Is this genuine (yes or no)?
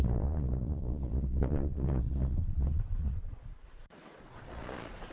no